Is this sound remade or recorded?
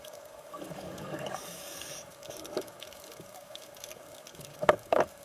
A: remade